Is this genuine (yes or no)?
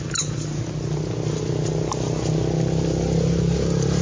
yes